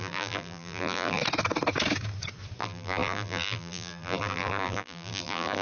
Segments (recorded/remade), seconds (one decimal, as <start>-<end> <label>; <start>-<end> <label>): 0.0-1.2 remade; 1.2-2.6 recorded; 2.6-5.6 remade